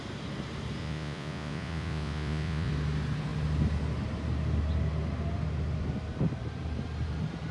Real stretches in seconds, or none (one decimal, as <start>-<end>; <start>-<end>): 0.0-0.8; 2.7-7.5